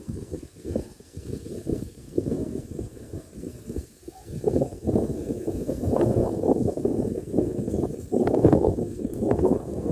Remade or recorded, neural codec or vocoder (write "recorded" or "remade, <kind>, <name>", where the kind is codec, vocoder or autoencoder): remade, codec, SNAC